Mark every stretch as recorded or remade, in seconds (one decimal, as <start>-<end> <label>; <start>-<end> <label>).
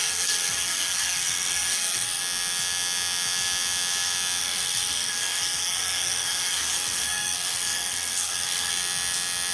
0.0-2.2 remade; 2.2-4.4 recorded; 4.4-8.7 remade; 8.7-9.5 recorded